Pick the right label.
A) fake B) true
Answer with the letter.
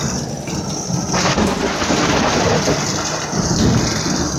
B